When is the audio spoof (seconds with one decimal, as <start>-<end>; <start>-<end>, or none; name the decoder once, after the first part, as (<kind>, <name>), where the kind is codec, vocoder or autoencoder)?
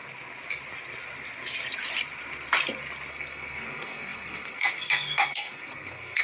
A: 3.1-6.2 (codec, SNAC)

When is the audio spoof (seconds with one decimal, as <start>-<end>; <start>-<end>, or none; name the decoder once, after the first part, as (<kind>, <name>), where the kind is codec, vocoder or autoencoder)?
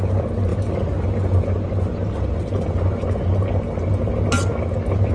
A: none